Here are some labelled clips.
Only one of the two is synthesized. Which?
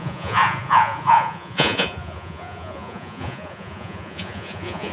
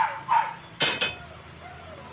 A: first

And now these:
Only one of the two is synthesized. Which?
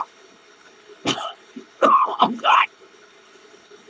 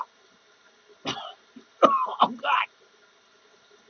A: first